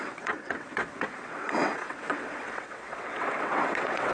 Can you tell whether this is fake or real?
fake